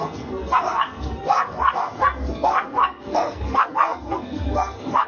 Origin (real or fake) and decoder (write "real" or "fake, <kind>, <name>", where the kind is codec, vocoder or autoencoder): fake, codec, SNAC